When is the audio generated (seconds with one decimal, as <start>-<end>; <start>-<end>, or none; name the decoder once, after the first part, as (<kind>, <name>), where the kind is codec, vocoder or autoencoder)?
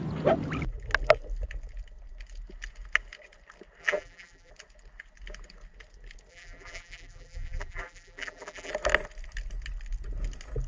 3.8-4.5 (vocoder, BigVGAN v2); 6.3-8.7